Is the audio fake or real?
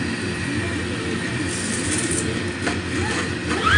real